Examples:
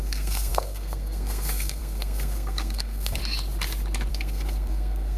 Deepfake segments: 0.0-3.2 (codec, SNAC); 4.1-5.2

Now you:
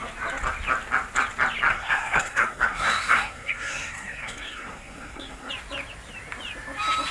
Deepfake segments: 1.7-5.5 (codec, SNAC)

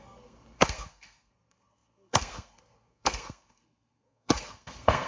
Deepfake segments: 0.0-5.1 (codec, SNAC)

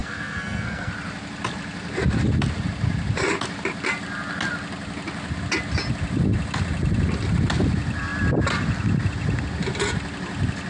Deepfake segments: 0.0-0.9 (codec, SNAC)

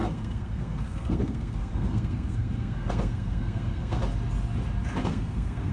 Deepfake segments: 0.0-4.0 (codec, SNAC); 5.0-5.7

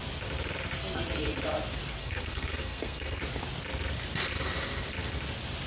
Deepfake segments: 2.0-3.2 (codec, SNAC)

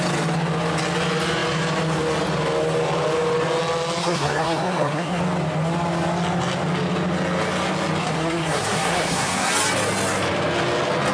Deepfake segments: 4.0-5.2 (codec, SNAC); 8.0-9.5